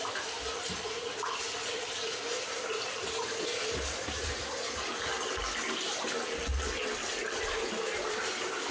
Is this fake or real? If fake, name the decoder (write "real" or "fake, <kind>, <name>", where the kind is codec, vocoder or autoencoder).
real